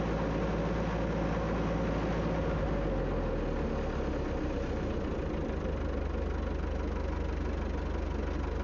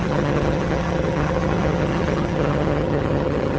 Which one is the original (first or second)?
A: first